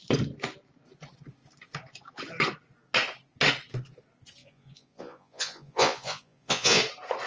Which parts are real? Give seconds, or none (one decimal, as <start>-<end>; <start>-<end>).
0.0-4.4; 6.8-7.3